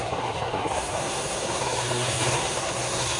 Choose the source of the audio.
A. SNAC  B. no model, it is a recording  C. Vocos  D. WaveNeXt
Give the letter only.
A